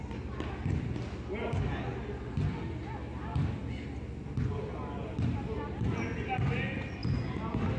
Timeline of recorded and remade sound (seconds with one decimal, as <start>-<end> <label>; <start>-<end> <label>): 0.0-7.8 recorded